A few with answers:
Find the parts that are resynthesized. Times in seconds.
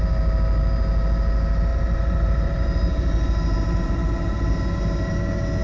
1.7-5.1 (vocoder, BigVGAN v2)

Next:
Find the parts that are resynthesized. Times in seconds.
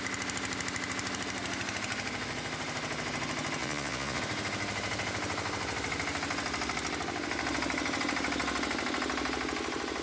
3.6-4.2 (vocoder, Vocos)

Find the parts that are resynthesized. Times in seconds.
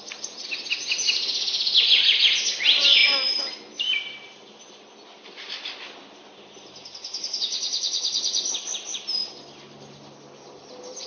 none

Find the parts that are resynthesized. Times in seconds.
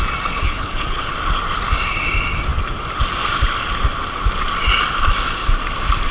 0.4-1.1 (codec, HILCodec)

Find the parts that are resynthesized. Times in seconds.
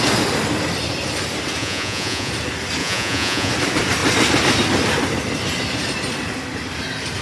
1.6-2.3 (vocoder, Vocos); 2.8-3.5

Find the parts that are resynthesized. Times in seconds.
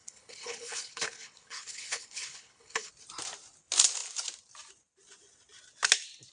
0.0-2.9 (codec, HILCodec)